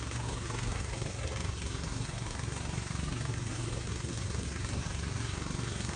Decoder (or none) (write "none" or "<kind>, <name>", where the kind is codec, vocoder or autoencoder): codec, SNAC